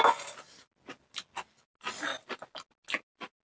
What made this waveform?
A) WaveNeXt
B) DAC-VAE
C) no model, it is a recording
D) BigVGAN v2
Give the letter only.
C